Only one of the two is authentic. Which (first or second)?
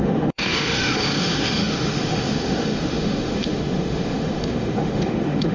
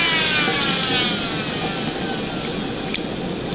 second